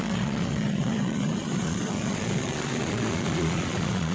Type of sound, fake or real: fake